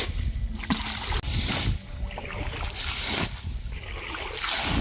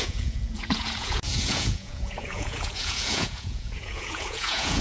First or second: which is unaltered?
first